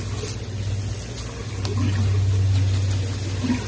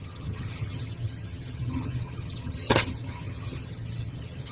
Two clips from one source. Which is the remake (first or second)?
second